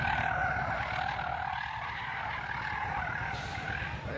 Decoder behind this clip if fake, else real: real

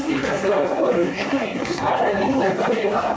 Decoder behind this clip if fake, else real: fake, codec, SNAC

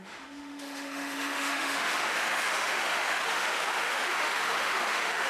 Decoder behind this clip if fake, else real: fake, autoencoder, DAC-VAE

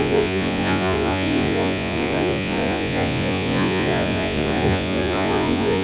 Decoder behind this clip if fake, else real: fake, vocoder, Vocos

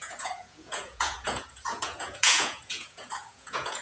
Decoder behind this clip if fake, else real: fake, vocoder, Vocos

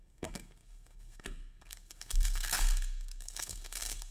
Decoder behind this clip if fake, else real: fake, codec, SNAC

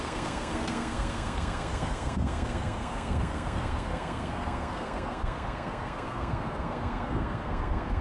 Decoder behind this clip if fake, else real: fake, codec, SNAC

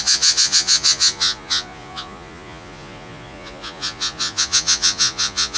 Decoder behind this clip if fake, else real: fake, vocoder, Vocos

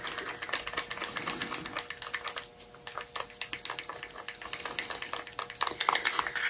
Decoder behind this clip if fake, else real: real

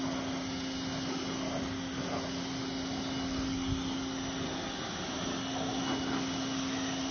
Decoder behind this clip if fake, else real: real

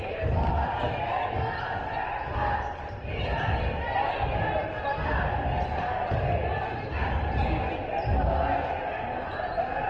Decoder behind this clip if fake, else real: real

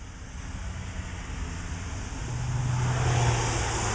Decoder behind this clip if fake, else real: real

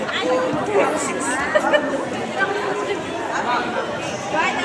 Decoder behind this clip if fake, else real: real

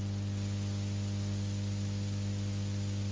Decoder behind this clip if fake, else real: real